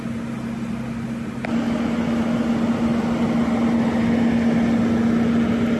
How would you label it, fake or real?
real